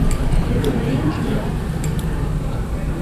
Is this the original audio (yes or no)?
no